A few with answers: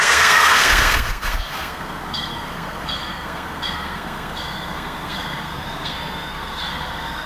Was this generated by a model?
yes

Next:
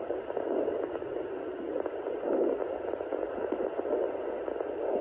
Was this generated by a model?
no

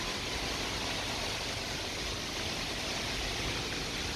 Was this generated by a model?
no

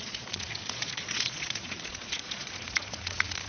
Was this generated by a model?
yes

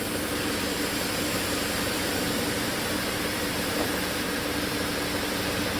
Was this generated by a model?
yes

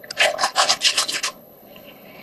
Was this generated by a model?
yes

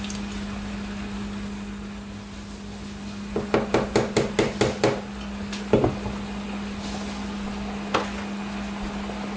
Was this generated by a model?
no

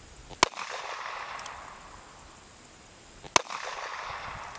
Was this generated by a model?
no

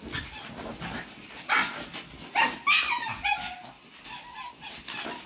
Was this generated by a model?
no